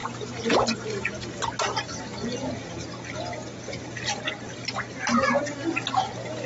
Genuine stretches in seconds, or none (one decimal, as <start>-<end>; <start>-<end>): 0.0-6.5